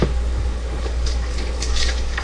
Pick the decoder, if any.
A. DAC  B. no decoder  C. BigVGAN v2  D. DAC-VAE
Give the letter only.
A